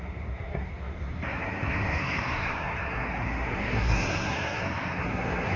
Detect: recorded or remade remade